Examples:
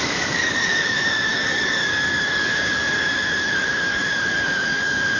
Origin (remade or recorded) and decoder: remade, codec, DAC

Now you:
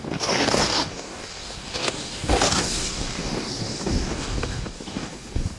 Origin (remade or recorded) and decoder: remade, codec, DAC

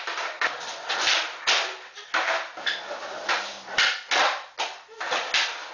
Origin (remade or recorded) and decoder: recorded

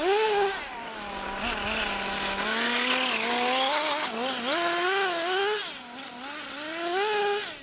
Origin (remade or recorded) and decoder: recorded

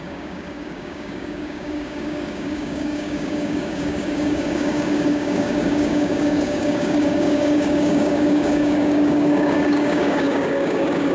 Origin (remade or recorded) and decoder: remade, codec, DAC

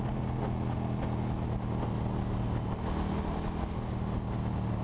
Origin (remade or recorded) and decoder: recorded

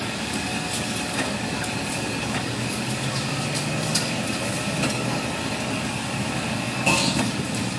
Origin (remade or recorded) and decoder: remade, codec, DAC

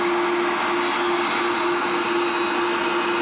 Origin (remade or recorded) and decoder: recorded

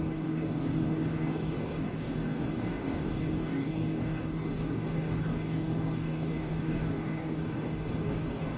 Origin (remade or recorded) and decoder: remade, codec, DAC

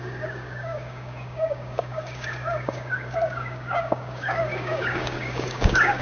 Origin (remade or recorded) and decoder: remade, codec, DAC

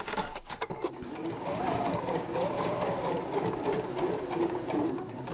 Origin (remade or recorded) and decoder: remade, codec, DAC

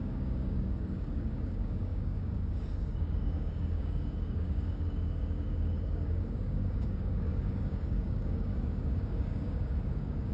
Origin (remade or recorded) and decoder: remade, codec, DAC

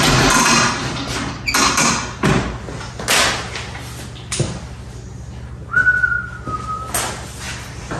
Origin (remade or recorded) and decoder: recorded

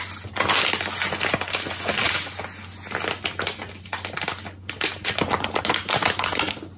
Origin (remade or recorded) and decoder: recorded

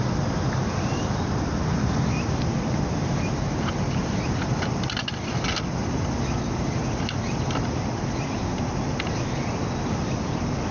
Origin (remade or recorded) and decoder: recorded